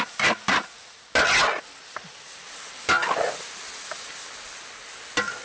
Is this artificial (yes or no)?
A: no